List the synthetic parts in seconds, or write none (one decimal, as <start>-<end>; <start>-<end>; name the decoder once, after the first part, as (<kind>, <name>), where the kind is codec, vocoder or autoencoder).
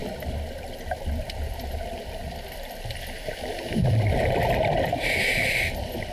1.4-6.1 (vocoder, BigVGAN v2)